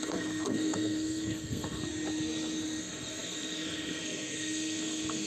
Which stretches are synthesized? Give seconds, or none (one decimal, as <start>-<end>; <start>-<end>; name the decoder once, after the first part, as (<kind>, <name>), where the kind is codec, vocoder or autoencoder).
0.0-1.8 (codec, SNAC); 2.8-5.3